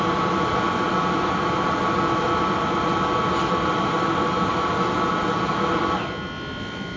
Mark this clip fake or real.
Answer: real